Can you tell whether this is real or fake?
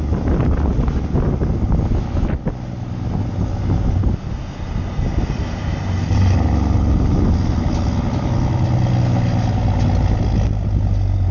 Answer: real